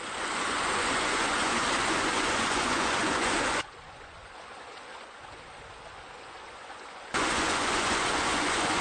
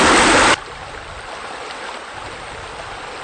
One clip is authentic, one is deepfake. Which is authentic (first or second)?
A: second